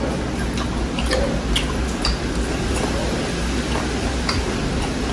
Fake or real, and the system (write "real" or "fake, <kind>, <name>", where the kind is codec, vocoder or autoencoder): real